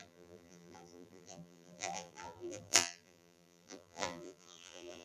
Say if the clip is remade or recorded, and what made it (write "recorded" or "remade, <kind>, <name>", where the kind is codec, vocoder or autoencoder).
remade, vocoder, BigVGAN v2